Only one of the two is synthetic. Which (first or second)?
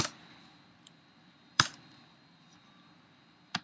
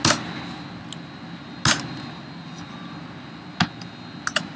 first